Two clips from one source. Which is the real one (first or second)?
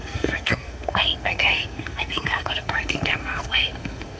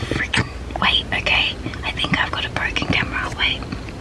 second